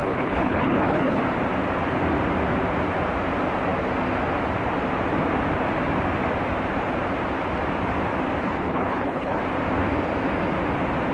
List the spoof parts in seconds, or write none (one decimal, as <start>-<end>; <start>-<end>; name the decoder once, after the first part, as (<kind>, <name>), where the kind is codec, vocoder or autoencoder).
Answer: 0.0-1.2 (codec, HILCodec); 8.4-9.4